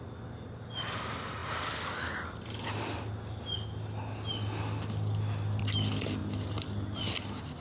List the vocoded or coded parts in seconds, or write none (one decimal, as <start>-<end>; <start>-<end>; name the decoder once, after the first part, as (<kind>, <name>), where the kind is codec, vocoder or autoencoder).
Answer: none